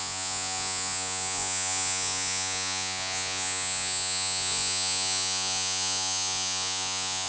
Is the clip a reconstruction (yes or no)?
yes